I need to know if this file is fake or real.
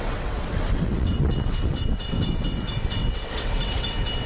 fake